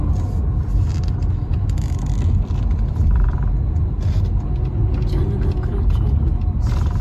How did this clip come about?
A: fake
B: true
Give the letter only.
B